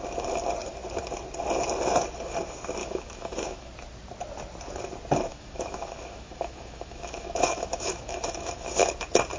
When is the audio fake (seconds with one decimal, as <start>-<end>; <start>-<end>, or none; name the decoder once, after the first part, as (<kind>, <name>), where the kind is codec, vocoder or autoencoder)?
2.8-3.7 (autoencoder, DAC-VAE); 5.3-8.9